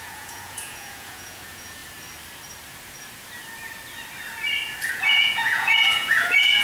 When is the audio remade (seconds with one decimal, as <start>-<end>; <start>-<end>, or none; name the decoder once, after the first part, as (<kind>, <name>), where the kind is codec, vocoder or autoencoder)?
0.0-1.8 (vocoder, Vocos); 4.9-6.6